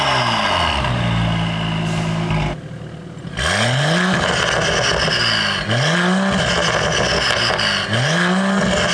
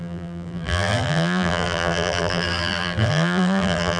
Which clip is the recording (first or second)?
first